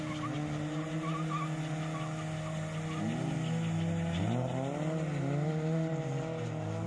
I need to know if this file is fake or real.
real